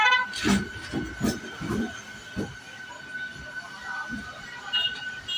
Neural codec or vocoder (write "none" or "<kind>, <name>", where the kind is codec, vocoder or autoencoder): none